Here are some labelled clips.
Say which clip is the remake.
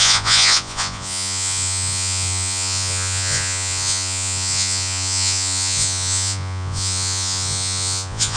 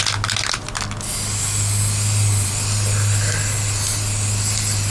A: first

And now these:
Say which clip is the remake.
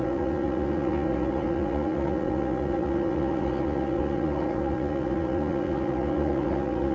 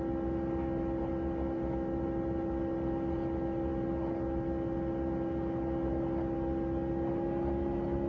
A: first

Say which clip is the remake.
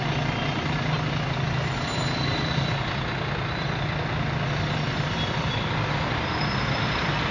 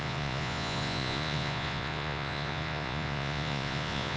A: second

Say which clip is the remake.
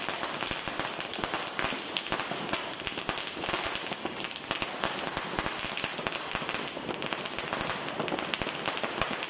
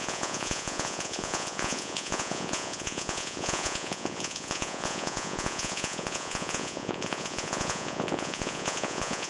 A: second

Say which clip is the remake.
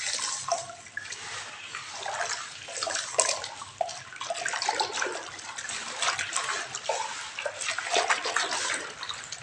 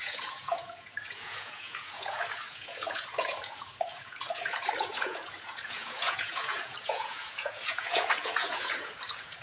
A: second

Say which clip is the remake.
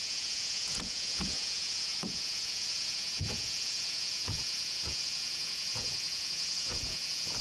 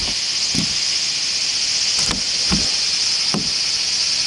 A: first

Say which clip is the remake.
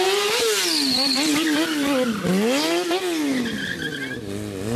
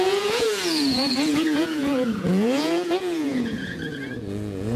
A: second